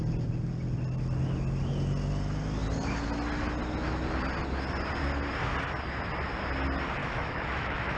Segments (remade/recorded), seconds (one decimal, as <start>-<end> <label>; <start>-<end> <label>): 0.0-7.0 recorded; 7.0-8.0 remade